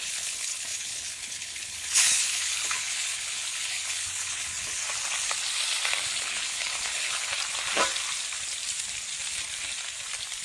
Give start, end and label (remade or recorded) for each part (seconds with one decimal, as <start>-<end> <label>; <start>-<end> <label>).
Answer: 0.0-4.8 remade; 4.8-6.2 recorded; 6.2-7.3 remade; 7.3-10.4 recorded